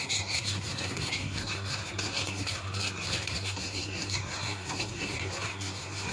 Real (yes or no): no